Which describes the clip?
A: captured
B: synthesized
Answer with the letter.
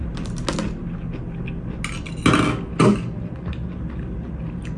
A